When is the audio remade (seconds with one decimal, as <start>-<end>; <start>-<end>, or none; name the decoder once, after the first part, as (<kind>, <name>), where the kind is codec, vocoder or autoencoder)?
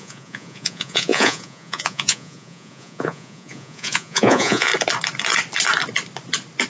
0.0-4.7 (vocoder, Vocos)